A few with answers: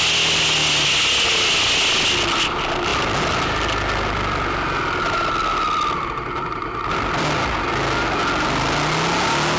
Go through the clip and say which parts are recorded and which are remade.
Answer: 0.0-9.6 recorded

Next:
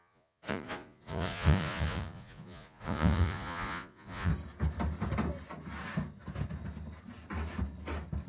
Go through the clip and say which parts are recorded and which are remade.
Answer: 0.0-4.3 remade; 4.3-8.3 recorded

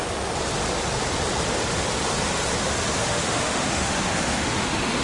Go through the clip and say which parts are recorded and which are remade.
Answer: 0.0-2.9 recorded; 2.9-5.0 remade

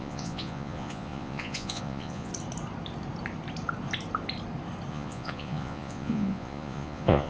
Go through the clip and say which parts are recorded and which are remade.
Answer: 0.0-2.3 remade; 2.3-4.9 recorded; 4.9-7.3 remade

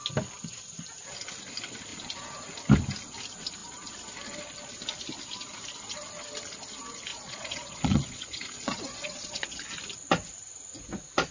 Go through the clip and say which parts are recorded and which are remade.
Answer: 0.0-7.1 recorded; 7.1-9.6 remade; 9.6-11.3 recorded